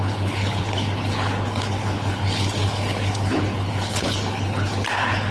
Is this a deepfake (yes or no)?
yes